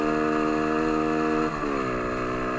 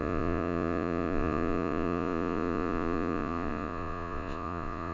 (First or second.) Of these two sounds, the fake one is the second